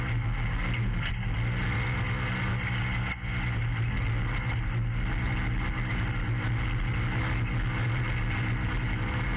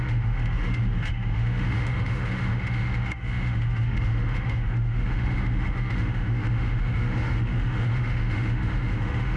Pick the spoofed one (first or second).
second